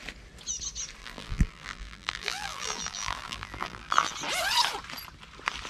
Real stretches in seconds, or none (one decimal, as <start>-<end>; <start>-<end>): 0.0-1.0; 4.1-5.7